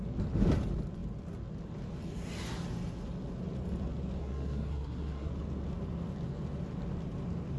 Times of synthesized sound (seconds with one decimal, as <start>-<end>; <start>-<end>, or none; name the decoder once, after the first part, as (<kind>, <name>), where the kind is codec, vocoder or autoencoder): 4.2-5.3 (codec, SNAC)